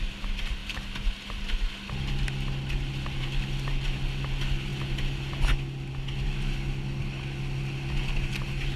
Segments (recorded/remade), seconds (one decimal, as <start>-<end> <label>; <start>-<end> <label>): 0.0-8.8 recorded

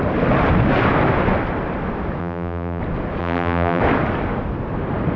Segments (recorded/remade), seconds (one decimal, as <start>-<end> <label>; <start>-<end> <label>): 0.0-2.2 recorded; 2.2-2.8 remade; 2.8-3.2 recorded; 3.2-3.8 remade; 3.8-5.2 recorded